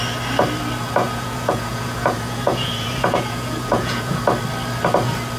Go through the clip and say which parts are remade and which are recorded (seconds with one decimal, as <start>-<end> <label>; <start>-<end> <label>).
0.0-1.0 recorded; 1.0-4.2 remade; 4.2-5.4 recorded